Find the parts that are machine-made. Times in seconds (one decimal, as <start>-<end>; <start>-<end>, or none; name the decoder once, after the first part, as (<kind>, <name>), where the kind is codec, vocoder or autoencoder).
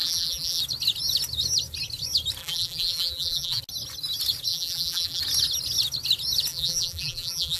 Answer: 0.0-0.6 (vocoder, BigVGAN v2); 2.4-3.6; 4.5-5.2; 6.5-7.6